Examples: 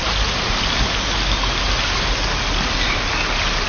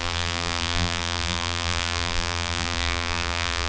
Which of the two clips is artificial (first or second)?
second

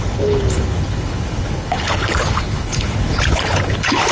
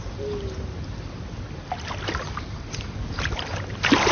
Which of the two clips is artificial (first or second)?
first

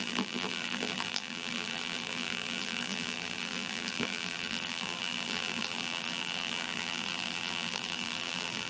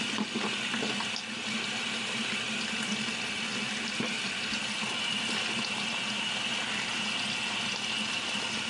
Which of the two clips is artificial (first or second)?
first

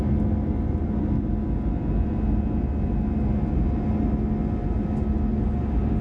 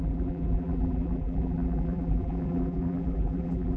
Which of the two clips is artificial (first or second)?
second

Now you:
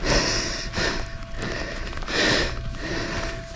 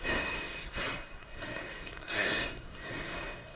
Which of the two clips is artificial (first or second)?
second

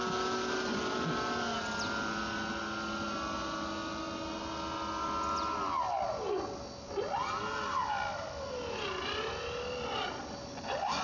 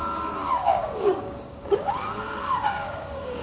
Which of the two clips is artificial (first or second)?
second